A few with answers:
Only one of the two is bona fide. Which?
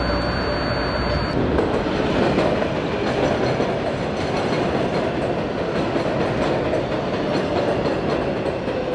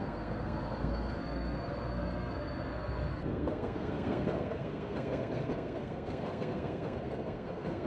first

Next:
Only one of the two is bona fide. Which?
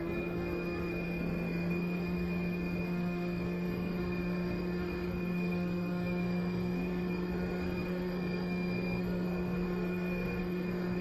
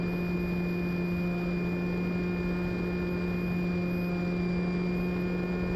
second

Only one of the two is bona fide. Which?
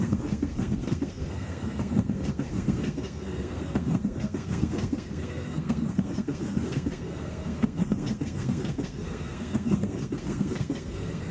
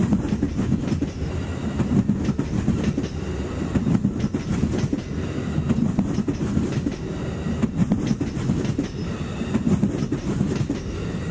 second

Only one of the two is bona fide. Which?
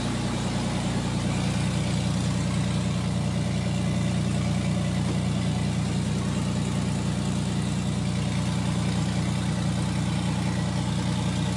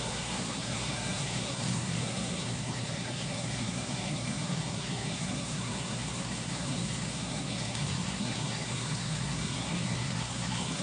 first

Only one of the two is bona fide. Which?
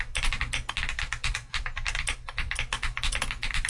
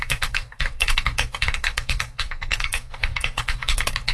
first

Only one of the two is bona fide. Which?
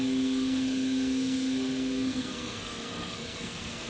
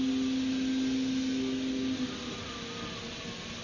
second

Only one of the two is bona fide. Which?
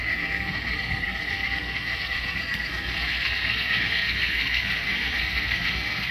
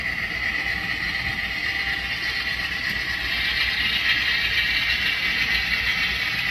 second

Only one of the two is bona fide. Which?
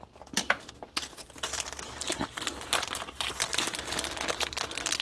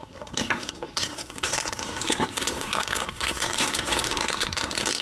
first